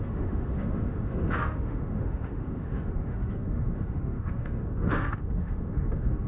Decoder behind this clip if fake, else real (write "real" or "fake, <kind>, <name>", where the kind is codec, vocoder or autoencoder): fake, autoencoder, DAC-VAE